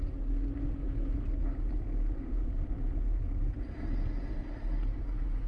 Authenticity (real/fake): real